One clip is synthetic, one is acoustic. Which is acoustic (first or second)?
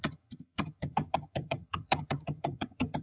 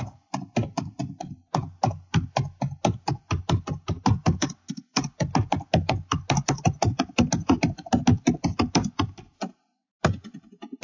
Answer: second